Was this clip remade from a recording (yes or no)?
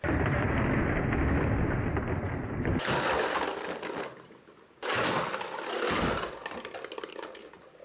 no